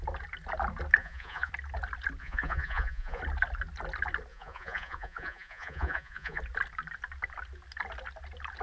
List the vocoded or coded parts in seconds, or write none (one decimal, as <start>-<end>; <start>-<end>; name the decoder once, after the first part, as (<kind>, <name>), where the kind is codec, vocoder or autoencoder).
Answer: 1.0-1.5 (vocoder, Vocos); 2.2-3.2; 4.3-6.4